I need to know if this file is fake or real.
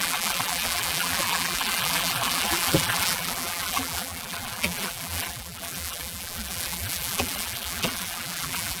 fake